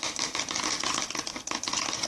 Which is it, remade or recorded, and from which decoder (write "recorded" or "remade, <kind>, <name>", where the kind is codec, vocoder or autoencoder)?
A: recorded